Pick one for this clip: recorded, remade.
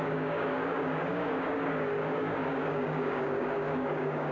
remade